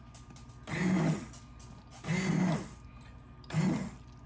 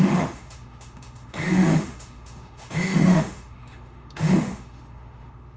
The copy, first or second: second